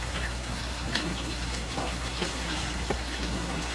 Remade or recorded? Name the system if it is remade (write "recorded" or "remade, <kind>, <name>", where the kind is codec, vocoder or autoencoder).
remade, codec, SNAC